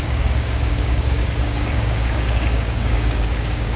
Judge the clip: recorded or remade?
remade